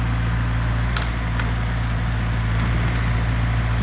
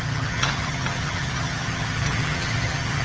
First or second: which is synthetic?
second